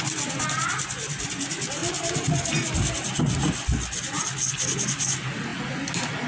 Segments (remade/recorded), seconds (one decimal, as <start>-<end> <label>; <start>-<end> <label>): 0.0-6.3 recorded